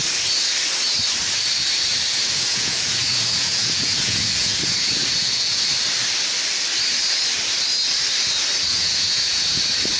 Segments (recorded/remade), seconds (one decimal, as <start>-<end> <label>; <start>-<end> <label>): 0.0-2.2 recorded; 2.2-5.7 remade; 5.7-8.7 recorded; 8.7-9.6 remade; 9.6-10.0 recorded